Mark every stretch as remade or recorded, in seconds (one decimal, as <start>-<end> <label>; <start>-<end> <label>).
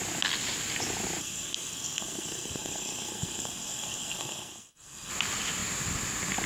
0.0-1.2 recorded; 1.2-5.1 remade; 5.1-6.5 recorded